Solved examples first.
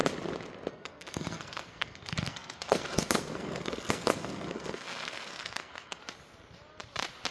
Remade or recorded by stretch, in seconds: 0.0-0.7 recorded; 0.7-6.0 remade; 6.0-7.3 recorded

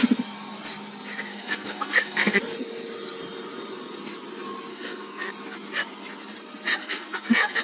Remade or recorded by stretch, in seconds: 0.0-1.3 recorded; 1.3-2.4 remade; 2.4-4.7 recorded; 4.7-5.3 remade; 5.3-6.8 recorded; 6.8-7.6 remade

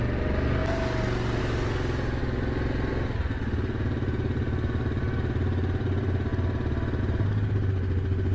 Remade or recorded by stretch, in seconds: 0.0-8.3 recorded

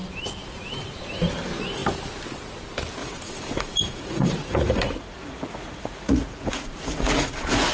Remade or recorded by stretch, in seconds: 0.0-3.0 recorded; 3.0-7.7 remade